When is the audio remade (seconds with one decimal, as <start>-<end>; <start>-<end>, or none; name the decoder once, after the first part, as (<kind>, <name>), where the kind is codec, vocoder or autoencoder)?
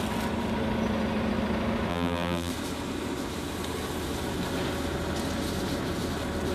1.9-2.5 (vocoder, BigVGAN v2)